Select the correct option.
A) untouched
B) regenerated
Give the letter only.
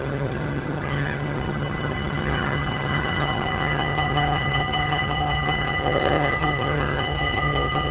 B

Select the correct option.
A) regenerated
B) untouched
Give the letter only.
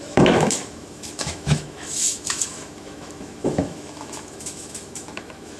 A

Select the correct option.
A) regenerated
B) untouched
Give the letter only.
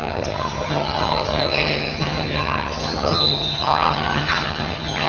A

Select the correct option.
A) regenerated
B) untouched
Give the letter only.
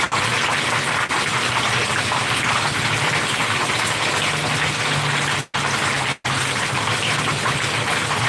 B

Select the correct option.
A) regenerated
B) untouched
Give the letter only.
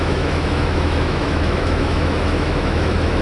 A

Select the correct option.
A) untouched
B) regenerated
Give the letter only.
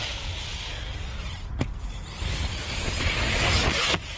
A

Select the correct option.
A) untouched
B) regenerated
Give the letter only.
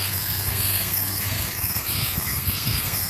B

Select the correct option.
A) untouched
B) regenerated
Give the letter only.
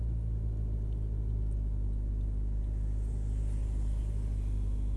A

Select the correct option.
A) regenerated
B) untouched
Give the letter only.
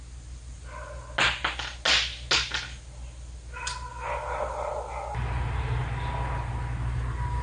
B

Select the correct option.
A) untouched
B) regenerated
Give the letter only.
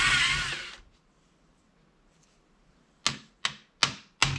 A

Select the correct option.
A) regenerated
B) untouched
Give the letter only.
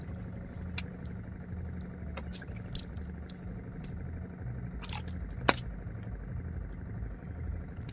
B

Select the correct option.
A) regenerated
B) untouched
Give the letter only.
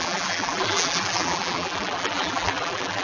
A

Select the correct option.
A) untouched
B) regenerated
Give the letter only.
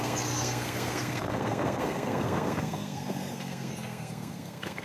B